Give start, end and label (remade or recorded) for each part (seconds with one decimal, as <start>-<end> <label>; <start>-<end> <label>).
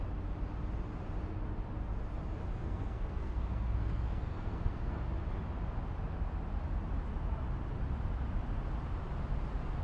0.0-2.6 recorded; 2.6-5.0 remade; 5.0-9.8 recorded